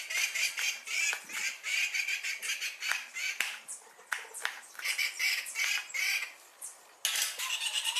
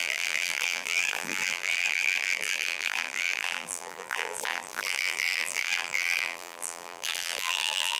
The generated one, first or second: second